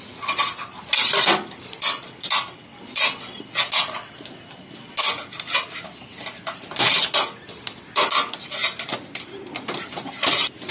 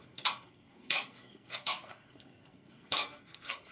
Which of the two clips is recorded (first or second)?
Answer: first